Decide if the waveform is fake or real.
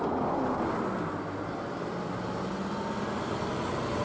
real